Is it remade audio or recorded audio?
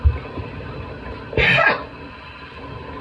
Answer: recorded